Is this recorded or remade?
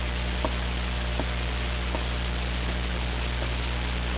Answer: recorded